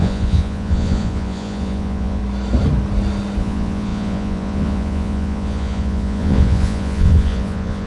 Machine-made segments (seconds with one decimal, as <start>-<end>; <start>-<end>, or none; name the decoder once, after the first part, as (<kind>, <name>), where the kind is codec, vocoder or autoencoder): 0.0-2.2 (vocoder, Vocos); 3.4-7.9